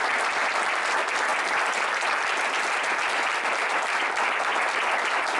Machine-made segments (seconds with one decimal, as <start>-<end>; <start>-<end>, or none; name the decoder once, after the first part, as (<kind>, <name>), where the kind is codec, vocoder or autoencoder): none